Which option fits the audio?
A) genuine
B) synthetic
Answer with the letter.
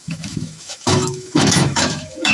B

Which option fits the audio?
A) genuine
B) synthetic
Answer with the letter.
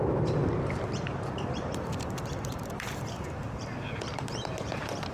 B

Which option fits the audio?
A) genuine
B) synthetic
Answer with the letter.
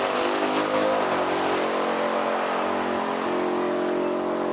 A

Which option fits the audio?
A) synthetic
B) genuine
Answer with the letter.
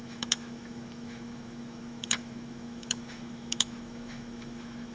A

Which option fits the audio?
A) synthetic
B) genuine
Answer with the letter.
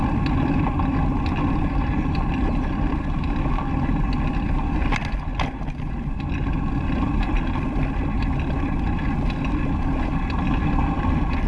B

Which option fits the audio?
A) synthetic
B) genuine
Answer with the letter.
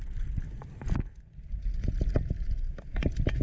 B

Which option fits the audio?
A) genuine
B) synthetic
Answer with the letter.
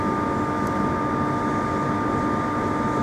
A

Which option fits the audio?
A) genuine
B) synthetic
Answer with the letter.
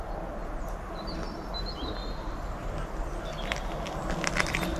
A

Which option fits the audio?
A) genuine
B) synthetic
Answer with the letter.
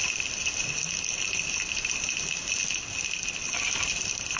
B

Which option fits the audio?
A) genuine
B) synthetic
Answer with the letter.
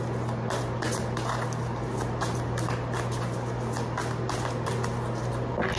A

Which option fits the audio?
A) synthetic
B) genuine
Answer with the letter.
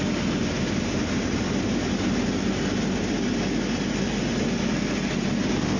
B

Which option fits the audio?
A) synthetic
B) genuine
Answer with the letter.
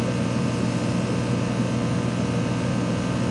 B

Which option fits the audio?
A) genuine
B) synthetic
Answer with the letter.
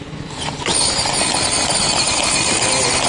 A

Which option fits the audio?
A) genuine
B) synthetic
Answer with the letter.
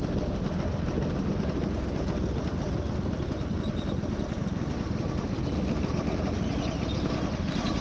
A